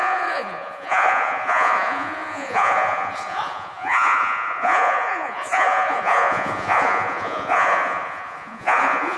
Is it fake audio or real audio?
fake